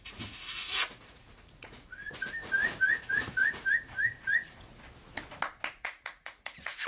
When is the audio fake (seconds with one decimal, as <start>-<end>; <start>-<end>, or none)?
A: 0.0-4.7; 5.8-6.9